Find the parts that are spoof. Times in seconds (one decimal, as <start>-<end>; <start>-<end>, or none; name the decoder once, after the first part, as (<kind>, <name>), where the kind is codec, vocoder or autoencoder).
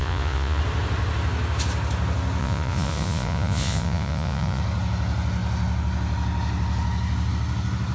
0.0-0.6 (vocoder, Vocos); 2.4-4.6